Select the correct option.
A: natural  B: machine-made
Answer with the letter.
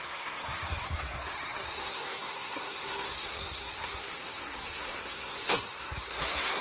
B